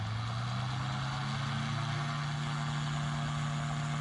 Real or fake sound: real